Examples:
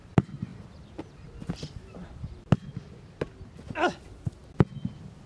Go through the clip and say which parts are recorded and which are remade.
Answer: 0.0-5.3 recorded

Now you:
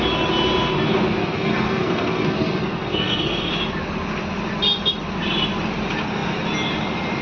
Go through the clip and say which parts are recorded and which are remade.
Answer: 0.0-1.2 recorded; 1.2-3.5 remade; 3.5-7.2 recorded